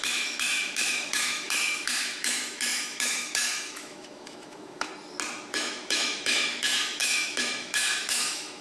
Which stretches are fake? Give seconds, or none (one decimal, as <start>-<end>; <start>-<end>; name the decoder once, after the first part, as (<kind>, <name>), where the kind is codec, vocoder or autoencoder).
0.0-4.9 (autoencoder, DAC-VAE); 5.5-8.6